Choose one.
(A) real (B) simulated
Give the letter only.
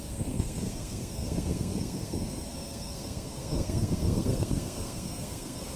B